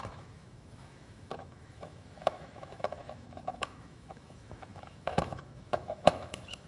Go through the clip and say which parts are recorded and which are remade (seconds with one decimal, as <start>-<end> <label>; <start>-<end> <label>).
0.0-6.7 remade